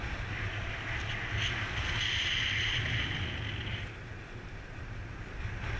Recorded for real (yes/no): yes